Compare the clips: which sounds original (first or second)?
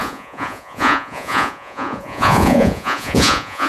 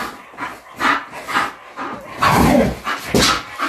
second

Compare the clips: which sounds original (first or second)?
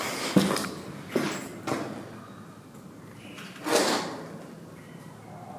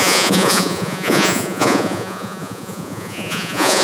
first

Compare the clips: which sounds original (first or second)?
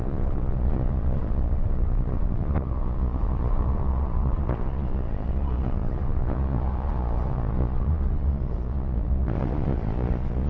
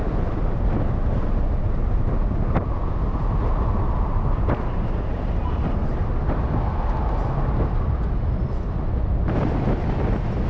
second